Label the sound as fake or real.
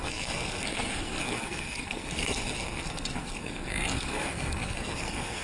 fake